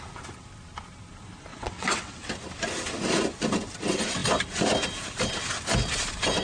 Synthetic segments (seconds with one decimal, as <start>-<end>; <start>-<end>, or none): 1.5-2.3